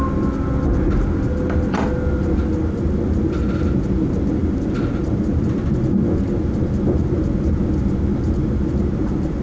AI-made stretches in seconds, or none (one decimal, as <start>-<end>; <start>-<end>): none